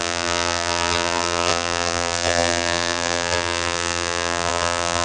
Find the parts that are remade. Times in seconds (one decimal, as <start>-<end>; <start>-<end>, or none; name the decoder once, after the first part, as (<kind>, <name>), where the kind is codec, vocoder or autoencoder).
0.0-5.0 (vocoder, BigVGAN v2)